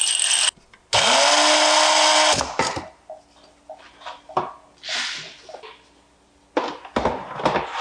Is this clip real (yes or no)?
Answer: yes